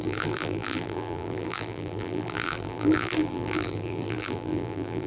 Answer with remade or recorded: remade